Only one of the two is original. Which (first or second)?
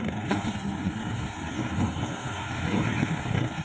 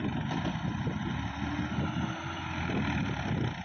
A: second